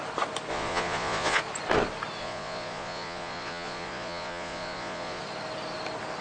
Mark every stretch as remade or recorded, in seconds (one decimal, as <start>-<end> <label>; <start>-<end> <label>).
0.0-0.5 recorded; 0.5-1.4 remade; 1.4-2.2 recorded; 2.2-5.2 remade; 5.2-6.2 recorded